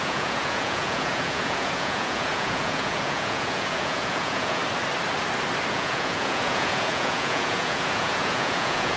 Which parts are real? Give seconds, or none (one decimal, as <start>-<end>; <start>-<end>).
4.6-5.7